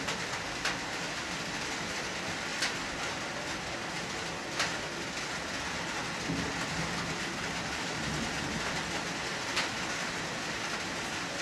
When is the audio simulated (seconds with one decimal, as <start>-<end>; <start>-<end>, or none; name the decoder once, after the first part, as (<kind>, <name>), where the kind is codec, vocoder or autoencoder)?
none